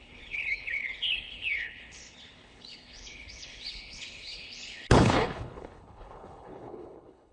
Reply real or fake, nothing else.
fake